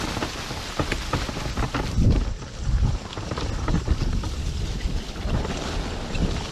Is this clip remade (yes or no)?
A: no